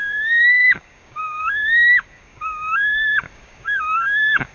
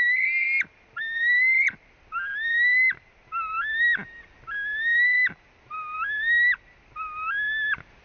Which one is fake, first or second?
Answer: first